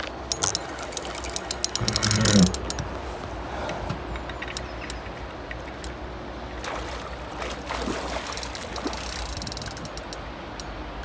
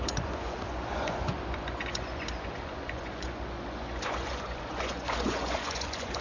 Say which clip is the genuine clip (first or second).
first